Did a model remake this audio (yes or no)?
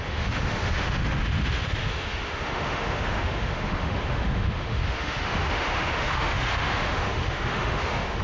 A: yes